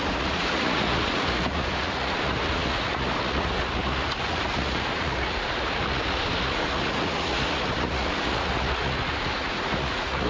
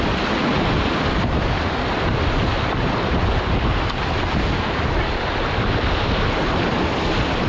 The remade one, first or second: first